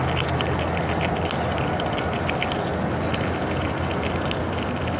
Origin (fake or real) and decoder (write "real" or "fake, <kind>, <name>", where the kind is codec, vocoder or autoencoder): real